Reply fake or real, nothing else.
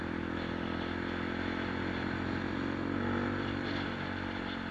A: real